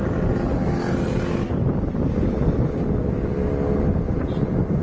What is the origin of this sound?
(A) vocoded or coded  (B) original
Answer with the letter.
B